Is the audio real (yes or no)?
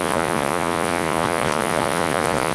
no